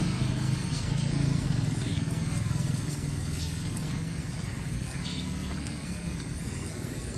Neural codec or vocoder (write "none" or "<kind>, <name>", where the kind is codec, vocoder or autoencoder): codec, SNAC